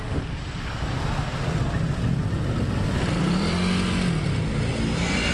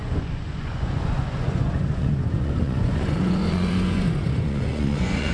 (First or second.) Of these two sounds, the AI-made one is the second